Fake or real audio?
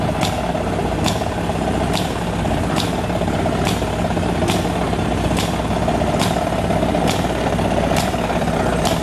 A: real